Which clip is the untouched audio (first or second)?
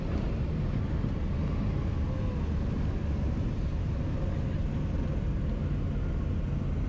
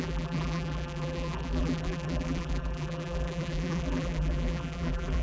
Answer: first